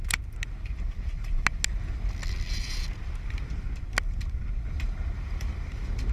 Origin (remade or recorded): recorded